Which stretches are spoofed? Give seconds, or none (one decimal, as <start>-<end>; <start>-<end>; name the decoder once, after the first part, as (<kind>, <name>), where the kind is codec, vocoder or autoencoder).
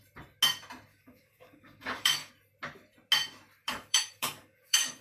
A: 0.9-2.3 (codec, DAC); 3.6-5.0